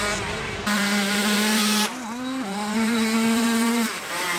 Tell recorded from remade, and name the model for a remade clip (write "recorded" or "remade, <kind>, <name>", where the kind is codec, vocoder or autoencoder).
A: remade, vocoder, BigVGAN v2